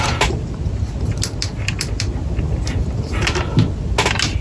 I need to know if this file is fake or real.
real